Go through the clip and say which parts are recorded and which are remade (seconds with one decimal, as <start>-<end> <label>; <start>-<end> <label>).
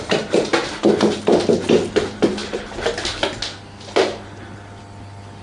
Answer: 0.0-5.4 recorded